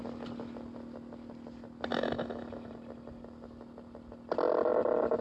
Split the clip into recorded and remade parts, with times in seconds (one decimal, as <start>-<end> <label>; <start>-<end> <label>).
0.0-1.9 recorded; 1.9-2.7 remade; 2.7-5.2 recorded